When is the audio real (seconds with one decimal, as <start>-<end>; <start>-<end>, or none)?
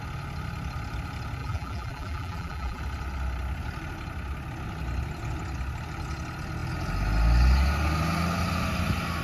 0.0-1.4; 2.8-9.2